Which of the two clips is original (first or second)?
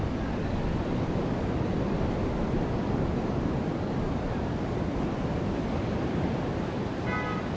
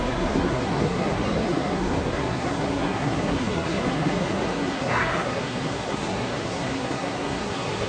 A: first